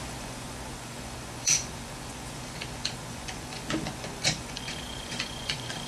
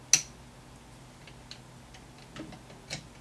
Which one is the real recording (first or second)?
second